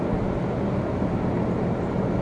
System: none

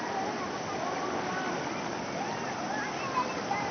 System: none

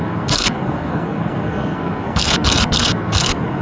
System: codec, SNAC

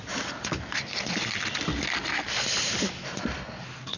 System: none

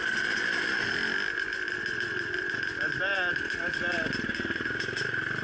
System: none